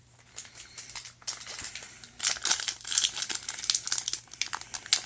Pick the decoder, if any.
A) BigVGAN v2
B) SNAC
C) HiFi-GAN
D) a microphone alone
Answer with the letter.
D